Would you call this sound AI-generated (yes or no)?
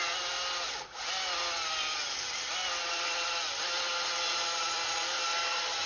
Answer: no